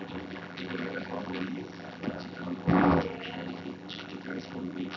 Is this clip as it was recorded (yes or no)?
no